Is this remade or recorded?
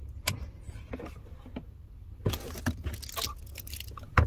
recorded